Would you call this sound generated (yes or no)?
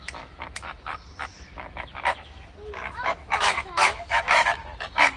yes